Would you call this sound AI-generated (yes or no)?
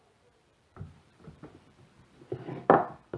yes